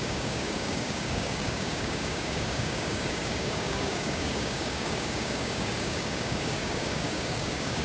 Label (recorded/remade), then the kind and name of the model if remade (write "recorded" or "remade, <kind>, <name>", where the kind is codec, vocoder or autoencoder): remade, codec, DAC